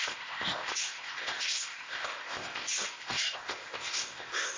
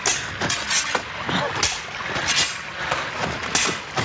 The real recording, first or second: second